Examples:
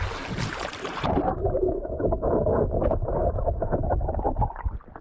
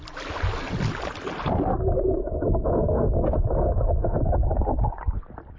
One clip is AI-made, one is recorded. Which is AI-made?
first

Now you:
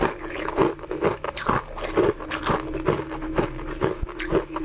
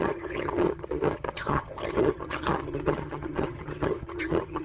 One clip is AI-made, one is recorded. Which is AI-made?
second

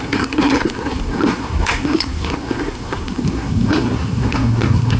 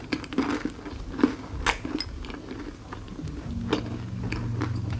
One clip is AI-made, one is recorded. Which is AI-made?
first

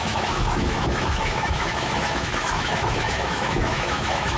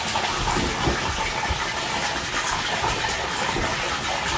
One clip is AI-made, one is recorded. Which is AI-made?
first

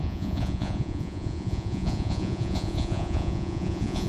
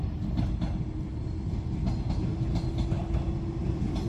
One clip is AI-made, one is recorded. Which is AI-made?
first